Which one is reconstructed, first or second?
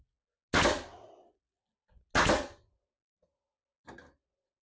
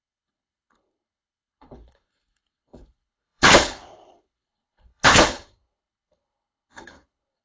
second